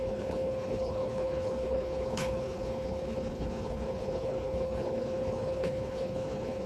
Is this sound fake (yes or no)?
yes